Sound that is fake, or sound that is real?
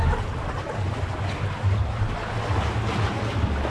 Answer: real